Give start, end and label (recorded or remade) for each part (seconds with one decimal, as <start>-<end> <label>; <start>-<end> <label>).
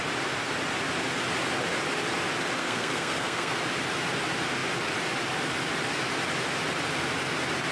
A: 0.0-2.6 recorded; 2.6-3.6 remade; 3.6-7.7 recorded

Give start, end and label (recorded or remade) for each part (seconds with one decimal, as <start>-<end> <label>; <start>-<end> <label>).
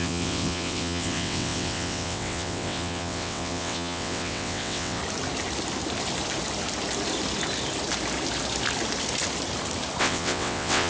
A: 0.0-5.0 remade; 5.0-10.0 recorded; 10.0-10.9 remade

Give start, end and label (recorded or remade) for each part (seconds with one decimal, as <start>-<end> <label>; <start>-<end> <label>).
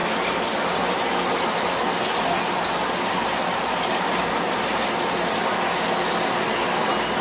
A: 0.0-7.2 recorded